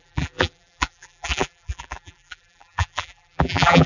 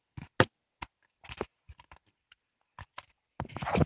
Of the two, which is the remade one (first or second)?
first